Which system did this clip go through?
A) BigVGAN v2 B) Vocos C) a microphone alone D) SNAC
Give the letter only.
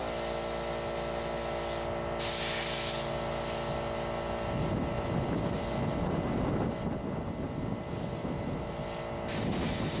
C